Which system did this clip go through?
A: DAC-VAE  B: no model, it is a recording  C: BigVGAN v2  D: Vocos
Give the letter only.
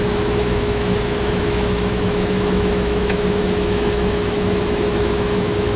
A